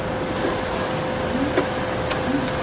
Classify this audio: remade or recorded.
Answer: recorded